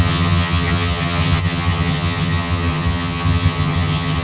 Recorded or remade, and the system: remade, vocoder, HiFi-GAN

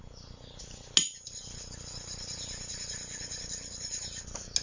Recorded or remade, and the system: recorded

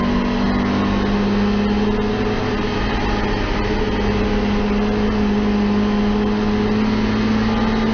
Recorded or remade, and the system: recorded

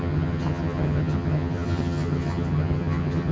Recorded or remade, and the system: remade, vocoder, HiFi-GAN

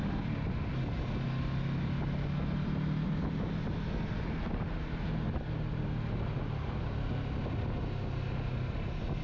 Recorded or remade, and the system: recorded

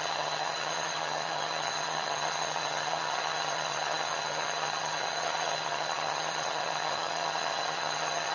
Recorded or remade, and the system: remade, vocoder, HiFi-GAN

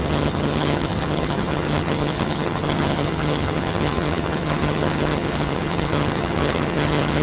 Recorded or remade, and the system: remade, vocoder, HiFi-GAN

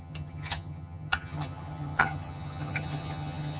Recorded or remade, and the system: remade, vocoder, HiFi-GAN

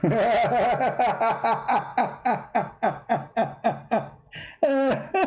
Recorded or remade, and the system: recorded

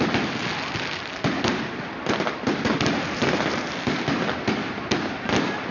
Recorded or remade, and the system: recorded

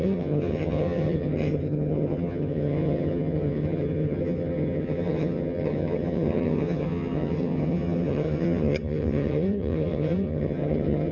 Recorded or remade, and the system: remade, vocoder, HiFi-GAN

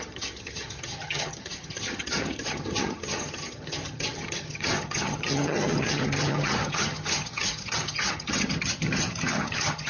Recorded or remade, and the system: remade, vocoder, HiFi-GAN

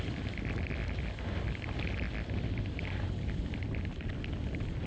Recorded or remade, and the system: recorded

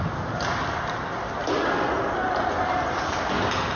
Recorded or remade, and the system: recorded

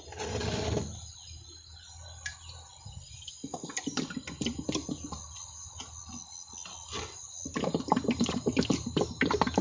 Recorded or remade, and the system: recorded